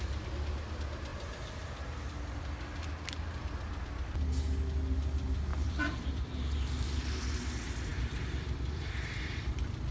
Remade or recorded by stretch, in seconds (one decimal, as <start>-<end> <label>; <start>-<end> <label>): 0.0-1.1 recorded; 1.1-2.9 remade; 2.9-5.5 recorded; 5.5-6.1 remade; 6.1-7.9 recorded; 7.9-9.9 remade